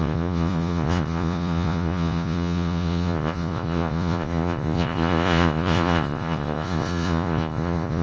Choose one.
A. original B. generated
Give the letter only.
B